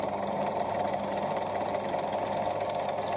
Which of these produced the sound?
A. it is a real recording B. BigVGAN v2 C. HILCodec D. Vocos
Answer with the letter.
A